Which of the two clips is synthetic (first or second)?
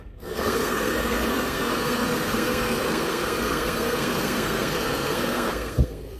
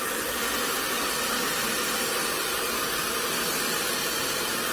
first